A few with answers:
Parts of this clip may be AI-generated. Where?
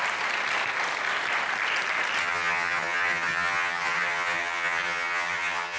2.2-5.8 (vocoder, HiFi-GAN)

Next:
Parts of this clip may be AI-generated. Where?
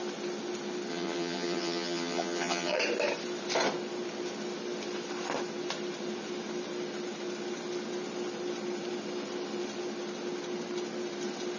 0.9-2.8 (vocoder, HiFi-GAN)